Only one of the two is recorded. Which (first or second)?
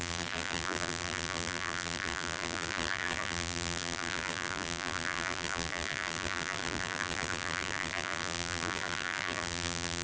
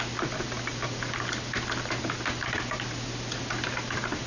second